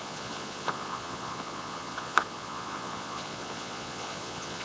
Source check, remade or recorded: remade